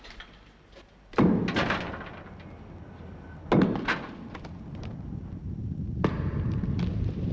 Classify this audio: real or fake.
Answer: real